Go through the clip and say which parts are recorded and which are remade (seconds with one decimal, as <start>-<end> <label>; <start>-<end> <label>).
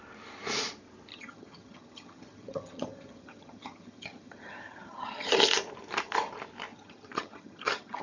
0.0-1.1 recorded; 1.1-5.4 remade; 5.4-6.7 recorded; 6.7-8.0 remade